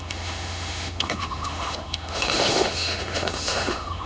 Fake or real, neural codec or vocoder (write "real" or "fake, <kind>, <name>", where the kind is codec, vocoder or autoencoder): fake, autoencoder, DAC-VAE